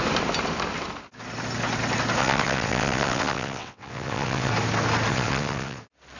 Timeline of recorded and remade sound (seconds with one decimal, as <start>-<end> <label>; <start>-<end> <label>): 0.0-2.2 recorded; 2.2-4.5 remade; 4.5-5.1 recorded; 5.1-5.8 remade; 5.8-6.2 recorded